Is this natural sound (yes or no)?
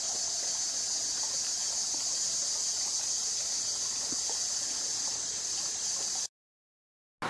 yes